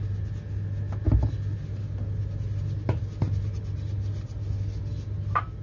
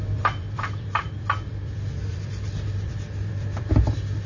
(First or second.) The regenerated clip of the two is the second